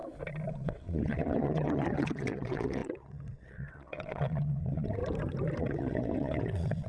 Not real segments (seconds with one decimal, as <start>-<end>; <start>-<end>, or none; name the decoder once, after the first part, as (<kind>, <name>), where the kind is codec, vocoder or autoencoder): 0.5-5.0 (vocoder, WaveNeXt); 5.6-6.9